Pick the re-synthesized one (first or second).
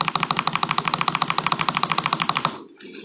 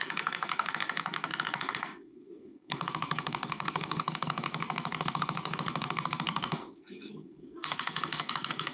second